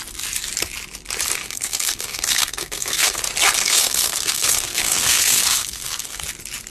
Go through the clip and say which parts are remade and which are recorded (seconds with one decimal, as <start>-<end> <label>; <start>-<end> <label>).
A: 0.0-1.4 recorded; 1.4-3.2 remade; 3.2-3.6 recorded; 3.6-6.2 remade; 6.2-6.7 recorded